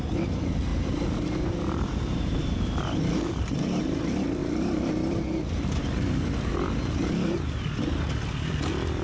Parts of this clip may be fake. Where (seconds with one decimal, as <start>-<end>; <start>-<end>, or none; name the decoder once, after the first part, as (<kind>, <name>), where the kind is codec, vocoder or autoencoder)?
0.7-4.0 (vocoder, BigVGAN v2); 4.4-4.9